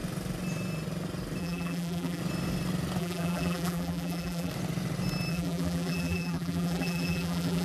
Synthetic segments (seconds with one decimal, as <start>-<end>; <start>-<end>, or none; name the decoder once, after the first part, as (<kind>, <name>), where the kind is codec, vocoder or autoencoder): 1.4-2.2 (vocoder, BigVGAN v2); 3.0-4.5; 5.3-7.6